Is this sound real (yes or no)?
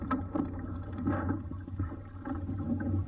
yes